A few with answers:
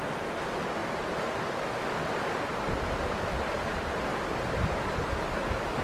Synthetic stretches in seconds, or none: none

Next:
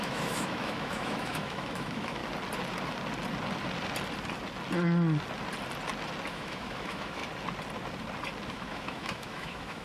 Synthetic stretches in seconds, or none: 0.0-2.2; 6.3-7.2; 8.5-9.8

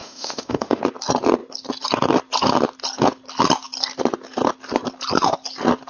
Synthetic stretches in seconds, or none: 0.0-0.8

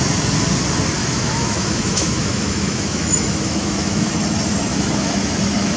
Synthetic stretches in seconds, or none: 1.0-4.1; 4.7-5.8

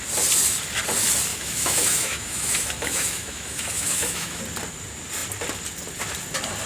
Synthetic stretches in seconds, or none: 1.3-4.4

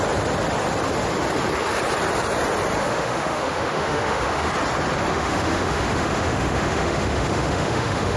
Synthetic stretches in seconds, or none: 2.8-4.5; 5.1-8.2

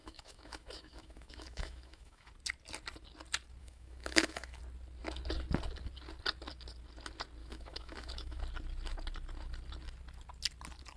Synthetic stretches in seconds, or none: 0.0-2.3; 3.6-4.6; 7.4-8.4

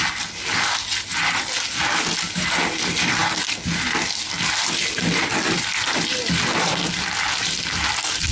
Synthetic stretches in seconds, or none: none